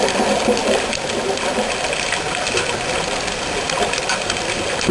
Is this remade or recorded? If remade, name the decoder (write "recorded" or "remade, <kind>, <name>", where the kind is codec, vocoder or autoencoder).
recorded